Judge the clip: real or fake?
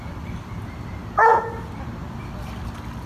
real